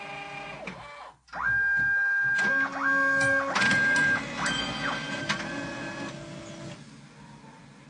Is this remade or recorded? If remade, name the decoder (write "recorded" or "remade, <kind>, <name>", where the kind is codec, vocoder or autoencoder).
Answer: recorded